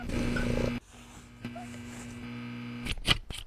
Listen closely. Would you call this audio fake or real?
real